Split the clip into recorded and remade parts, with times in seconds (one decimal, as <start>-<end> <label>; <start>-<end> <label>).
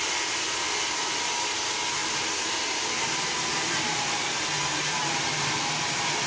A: 0.0-2.0 recorded; 2.0-5.8 remade; 5.8-6.3 recorded